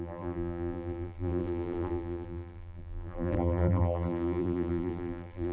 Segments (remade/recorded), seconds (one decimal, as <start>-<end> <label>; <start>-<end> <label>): 0.0-5.5 remade